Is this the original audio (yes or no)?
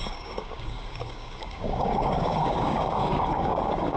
no